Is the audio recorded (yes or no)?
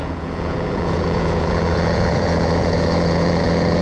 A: no